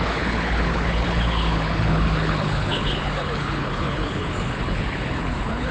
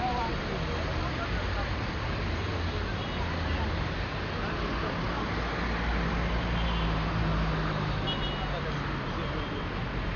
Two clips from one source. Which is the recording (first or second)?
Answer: second